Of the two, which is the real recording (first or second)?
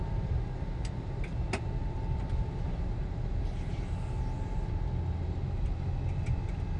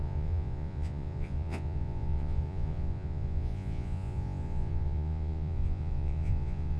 first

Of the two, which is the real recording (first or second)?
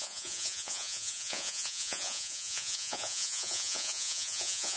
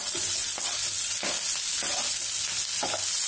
second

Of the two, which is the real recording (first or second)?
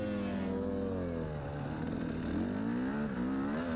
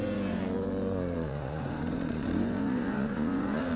first